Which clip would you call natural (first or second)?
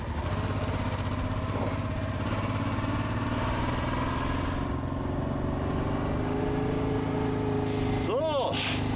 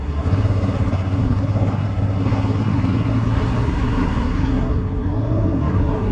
first